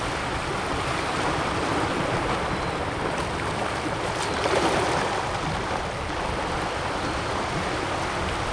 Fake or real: real